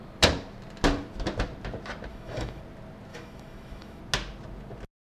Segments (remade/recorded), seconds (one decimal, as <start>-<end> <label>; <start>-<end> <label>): 0.0-2.1 recorded; 2.1-2.6 remade; 2.6-3.1 recorded; 3.1-4.0 remade; 4.0-5.0 recorded